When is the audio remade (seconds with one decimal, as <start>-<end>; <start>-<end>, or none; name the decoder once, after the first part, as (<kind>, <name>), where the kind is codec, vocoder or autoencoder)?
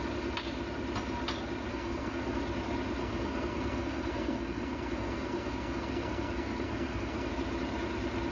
1.7-2.4 (codec, SNAC); 3.0-7.3